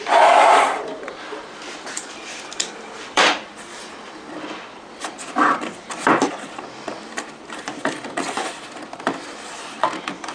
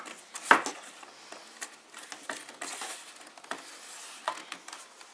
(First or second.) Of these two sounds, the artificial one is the first